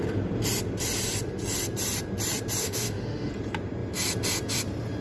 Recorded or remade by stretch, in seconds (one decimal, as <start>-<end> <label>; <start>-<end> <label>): 0.0-2.6 recorded; 2.6-3.3 remade; 3.3-5.0 recorded